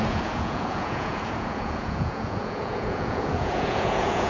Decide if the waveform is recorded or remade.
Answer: remade